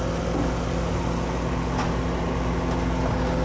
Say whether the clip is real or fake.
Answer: real